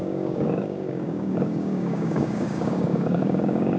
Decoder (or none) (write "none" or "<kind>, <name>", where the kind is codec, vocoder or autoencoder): codec, DAC